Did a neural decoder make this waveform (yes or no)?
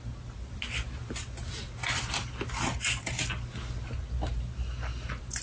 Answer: no